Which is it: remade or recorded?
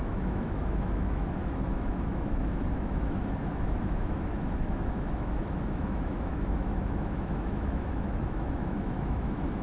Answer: remade